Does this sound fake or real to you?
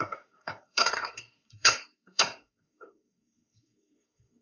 fake